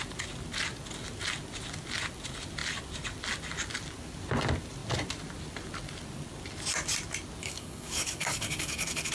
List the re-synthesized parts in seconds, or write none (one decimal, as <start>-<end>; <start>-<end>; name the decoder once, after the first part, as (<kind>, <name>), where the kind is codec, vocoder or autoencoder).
7.4-9.1 (codec, DAC)